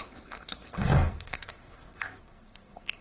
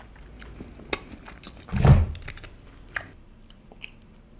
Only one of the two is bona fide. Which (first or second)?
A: second